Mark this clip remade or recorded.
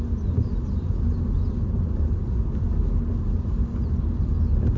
recorded